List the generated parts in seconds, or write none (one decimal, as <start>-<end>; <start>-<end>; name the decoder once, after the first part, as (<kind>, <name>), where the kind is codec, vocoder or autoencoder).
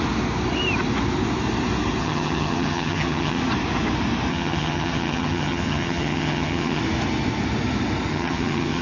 2.0-3.4 (vocoder, HiFi-GAN); 4.3-6.8; 8.1-8.8